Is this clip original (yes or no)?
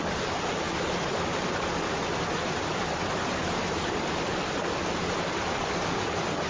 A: yes